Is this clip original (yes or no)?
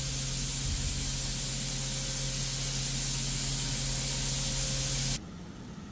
yes